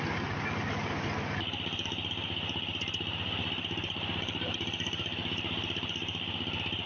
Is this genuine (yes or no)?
yes